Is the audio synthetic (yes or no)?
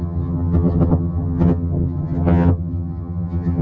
yes